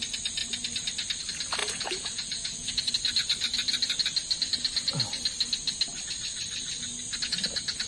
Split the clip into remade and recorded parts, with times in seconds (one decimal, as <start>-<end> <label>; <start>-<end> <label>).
0.0-1.6 recorded; 1.6-2.9 remade; 2.9-7.9 recorded